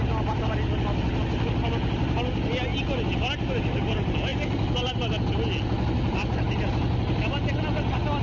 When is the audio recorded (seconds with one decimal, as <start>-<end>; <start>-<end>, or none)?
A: 0.0-8.2